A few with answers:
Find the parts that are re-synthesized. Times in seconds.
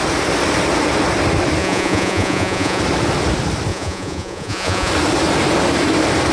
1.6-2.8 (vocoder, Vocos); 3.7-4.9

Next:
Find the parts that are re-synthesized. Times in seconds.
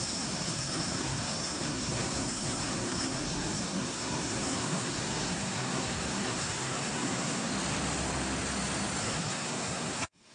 0.0-7.5 (codec, SNAC); 9.0-10.3